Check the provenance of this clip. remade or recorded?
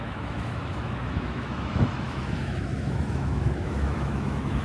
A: remade